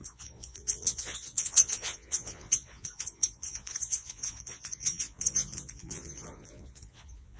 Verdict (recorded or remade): remade